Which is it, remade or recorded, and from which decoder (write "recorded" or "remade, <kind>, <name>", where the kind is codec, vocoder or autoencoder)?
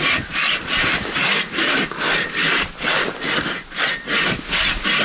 remade, vocoder, BigVGAN v2